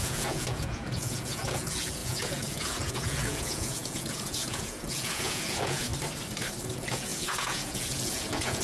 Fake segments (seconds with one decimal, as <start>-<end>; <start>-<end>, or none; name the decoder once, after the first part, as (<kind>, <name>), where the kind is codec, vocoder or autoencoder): 0.0-5.9 (vocoder, Vocos); 6.6-8.6